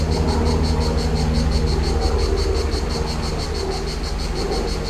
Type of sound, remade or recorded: recorded